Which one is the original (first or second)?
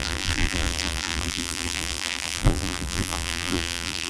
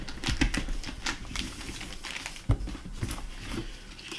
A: second